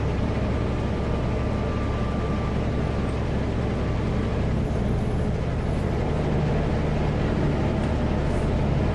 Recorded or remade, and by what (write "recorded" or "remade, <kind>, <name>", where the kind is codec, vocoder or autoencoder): recorded